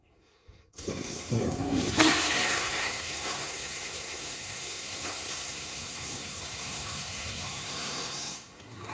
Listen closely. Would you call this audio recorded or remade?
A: remade